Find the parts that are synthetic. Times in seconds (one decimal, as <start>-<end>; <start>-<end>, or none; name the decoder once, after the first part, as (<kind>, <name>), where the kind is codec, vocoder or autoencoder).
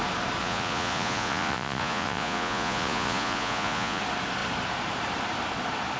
0.4-4.0 (vocoder, Vocos)